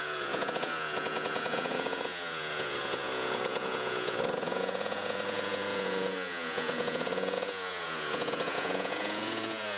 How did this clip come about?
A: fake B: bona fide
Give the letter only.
A